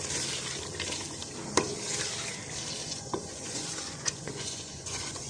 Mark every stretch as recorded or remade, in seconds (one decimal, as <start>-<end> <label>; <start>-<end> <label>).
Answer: 0.0-2.8 recorded; 2.8-5.3 remade